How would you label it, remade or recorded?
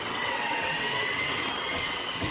remade